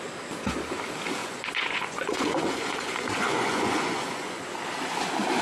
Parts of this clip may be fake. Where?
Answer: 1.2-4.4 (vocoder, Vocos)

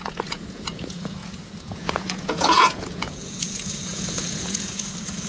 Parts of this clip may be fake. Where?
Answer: 0.0-5.3 (vocoder, Vocos)

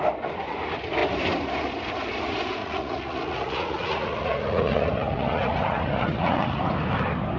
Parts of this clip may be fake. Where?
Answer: 2.6-6.6 (vocoder, Vocos)

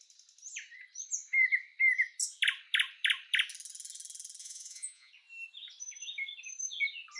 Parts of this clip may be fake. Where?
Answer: 4.4-5.1 (vocoder, Vocos)

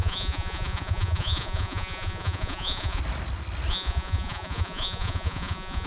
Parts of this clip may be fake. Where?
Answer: 0.0-3.0 (vocoder, Vocos); 3.7-5.9